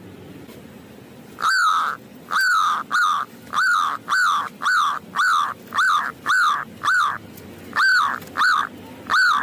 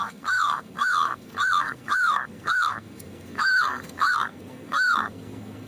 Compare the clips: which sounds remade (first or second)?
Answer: second